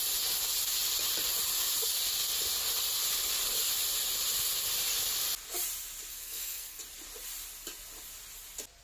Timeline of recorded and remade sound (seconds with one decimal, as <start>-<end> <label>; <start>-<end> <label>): 0.0-6.1 recorded; 6.1-6.8 remade; 6.8-8.8 recorded